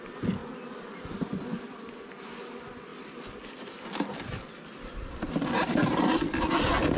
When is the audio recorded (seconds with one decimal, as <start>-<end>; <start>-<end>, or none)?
0.0-7.0